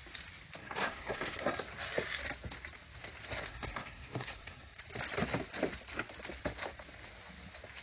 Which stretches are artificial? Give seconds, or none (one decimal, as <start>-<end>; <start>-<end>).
0.6-1.6; 3.5-4.8